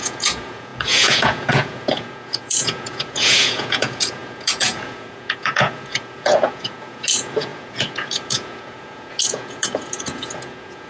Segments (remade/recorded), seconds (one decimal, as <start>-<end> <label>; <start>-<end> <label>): 0.0-10.9 remade